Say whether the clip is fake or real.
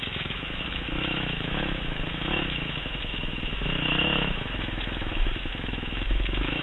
fake